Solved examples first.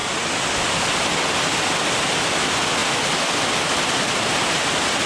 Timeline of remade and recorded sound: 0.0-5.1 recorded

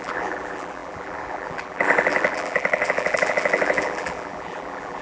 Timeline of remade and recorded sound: 0.0-5.0 remade